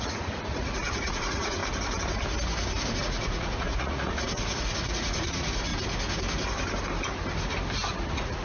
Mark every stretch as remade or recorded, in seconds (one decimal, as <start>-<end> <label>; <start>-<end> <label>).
0.0-1.6 remade; 1.6-3.0 recorded; 3.0-5.7 remade; 5.7-7.9 recorded; 7.9-8.4 remade